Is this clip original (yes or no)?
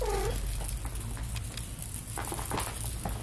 yes